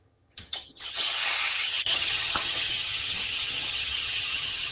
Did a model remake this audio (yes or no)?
yes